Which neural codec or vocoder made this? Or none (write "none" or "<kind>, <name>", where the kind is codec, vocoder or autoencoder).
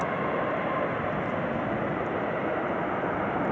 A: none